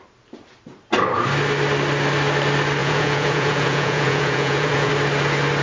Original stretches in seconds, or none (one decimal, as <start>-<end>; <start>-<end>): 0.0-2.8; 4.9-5.6